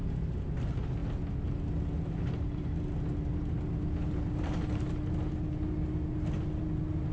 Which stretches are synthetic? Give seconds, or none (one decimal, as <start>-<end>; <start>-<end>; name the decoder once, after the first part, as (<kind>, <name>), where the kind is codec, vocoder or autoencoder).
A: none